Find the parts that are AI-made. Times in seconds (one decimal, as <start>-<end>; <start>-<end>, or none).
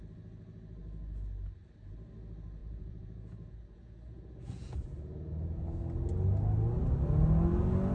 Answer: 2.6-5.8